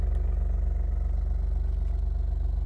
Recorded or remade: recorded